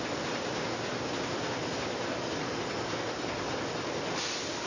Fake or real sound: real